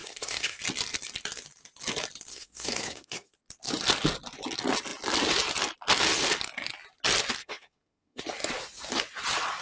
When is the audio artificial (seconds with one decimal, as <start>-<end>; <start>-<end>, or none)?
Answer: 0.0-0.6; 2.3-3.3; 7.4-8.2